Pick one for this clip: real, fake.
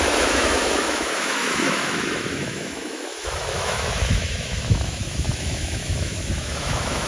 fake